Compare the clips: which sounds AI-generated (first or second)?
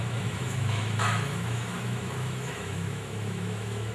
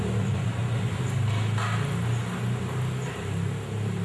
first